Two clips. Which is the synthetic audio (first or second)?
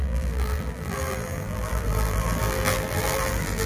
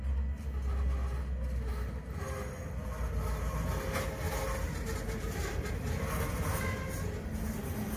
first